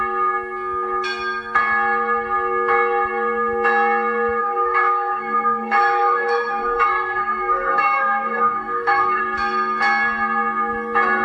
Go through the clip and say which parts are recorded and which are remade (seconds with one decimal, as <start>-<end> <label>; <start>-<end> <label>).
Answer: 0.0-4.4 recorded; 4.4-9.2 remade; 9.2-11.2 recorded